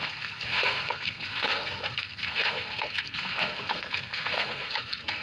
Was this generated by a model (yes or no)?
yes